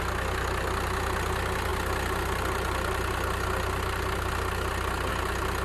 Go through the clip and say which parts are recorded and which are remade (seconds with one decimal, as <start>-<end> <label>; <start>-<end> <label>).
0.0-5.6 recorded